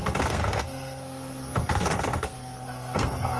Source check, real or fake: fake